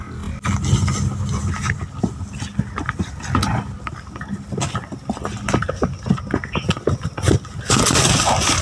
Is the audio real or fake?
real